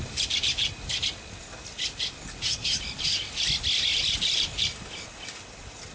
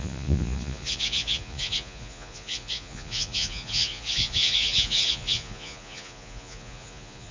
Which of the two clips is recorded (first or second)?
first